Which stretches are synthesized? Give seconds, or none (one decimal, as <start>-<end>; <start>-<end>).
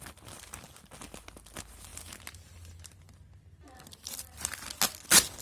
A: none